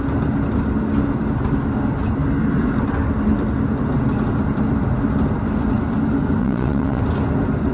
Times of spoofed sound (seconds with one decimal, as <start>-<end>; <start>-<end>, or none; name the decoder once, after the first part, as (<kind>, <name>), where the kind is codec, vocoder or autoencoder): 6.4-7.0 (vocoder, WaveNeXt)